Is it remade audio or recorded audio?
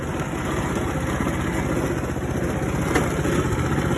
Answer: recorded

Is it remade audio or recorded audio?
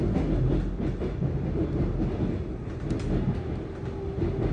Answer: recorded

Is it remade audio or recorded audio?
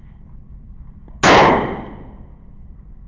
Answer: recorded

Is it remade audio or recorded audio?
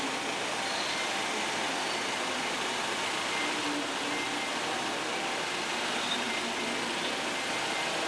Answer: recorded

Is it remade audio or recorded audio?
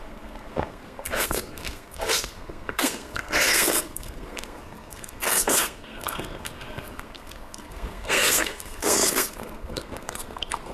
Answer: remade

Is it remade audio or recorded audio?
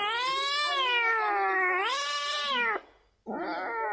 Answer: recorded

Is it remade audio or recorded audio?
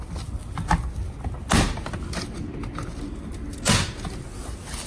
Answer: recorded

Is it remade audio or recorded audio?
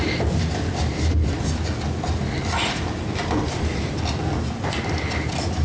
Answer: recorded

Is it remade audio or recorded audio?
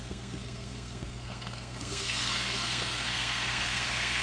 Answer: remade